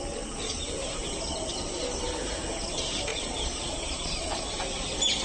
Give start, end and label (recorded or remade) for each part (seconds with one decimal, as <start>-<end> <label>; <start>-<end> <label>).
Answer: 0.0-3.1 recorded; 3.1-4.4 remade; 4.4-5.2 recorded